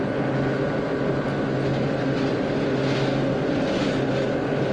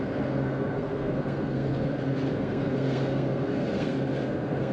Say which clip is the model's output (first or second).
second